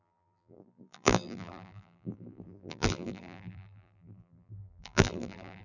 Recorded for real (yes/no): no